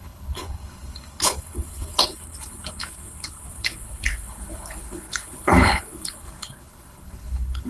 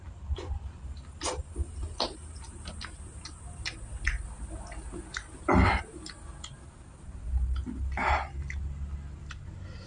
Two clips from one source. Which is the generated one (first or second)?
first